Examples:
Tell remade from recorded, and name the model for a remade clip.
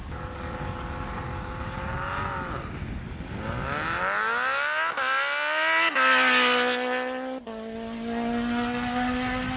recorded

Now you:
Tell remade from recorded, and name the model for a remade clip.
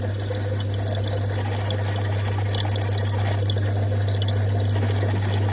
recorded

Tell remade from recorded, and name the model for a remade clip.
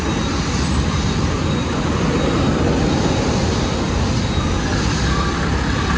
recorded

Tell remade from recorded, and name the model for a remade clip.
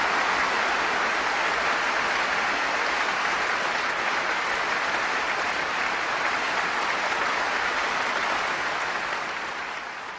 recorded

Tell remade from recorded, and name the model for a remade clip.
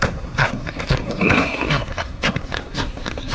remade, codec, SNAC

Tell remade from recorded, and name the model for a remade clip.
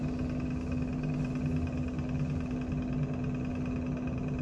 recorded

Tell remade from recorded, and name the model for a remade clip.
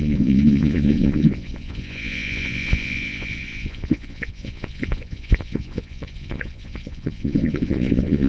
remade, vocoder, Vocos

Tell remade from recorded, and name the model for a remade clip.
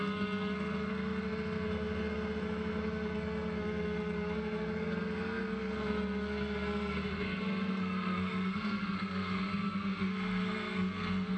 remade, codec, SNAC